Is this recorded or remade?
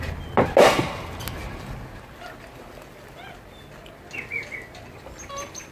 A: recorded